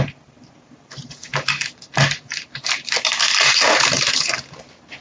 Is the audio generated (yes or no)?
no